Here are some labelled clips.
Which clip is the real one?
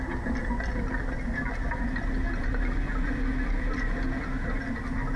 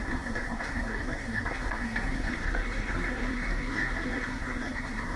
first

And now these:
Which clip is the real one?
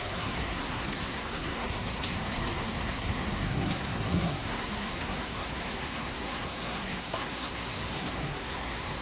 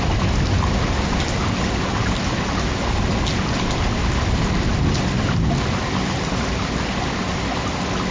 second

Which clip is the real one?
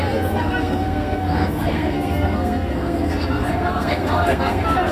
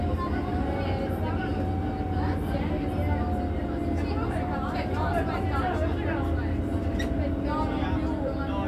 second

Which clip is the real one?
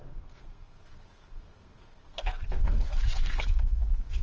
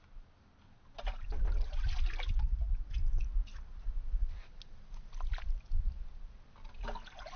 second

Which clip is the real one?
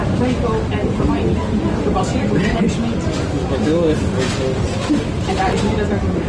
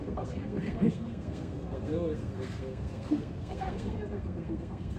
first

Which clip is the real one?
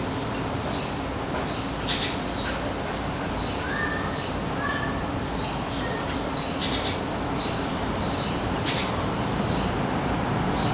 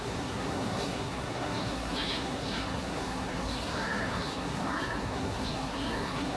first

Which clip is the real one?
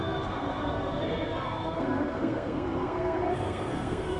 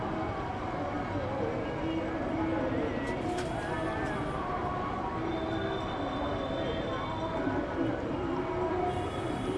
second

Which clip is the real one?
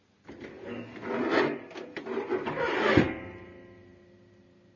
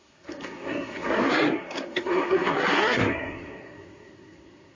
first